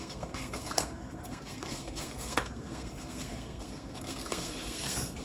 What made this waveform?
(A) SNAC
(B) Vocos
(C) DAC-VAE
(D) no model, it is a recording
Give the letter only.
A